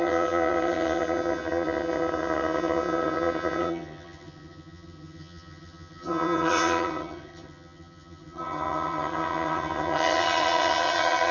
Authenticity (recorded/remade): remade